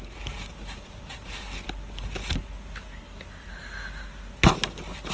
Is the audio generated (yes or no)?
no